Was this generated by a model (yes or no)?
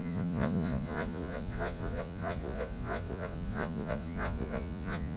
yes